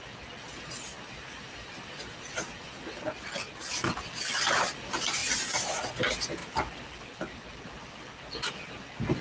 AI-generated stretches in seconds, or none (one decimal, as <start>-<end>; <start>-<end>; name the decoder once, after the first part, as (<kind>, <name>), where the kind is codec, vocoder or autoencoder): none